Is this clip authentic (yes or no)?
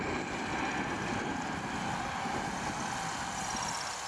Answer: yes